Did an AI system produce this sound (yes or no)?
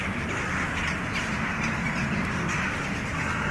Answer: no